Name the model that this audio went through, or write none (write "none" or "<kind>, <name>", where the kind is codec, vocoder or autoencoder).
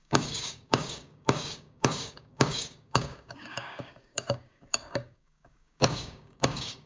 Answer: codec, DAC